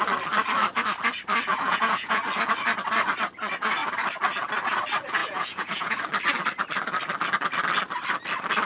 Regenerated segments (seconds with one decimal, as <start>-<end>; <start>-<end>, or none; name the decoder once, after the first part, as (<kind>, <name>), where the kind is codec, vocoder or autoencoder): 1.5-2.2 (vocoder, Vocos); 5.2-6.0